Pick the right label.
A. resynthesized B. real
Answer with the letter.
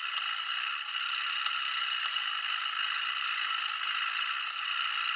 B